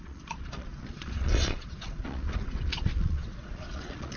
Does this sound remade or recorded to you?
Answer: remade